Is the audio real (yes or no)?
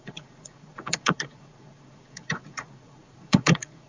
no